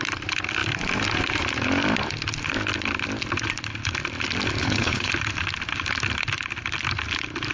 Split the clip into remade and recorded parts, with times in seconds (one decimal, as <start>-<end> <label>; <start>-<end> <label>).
0.0-4.6 recorded; 4.6-5.1 remade; 5.1-7.5 recorded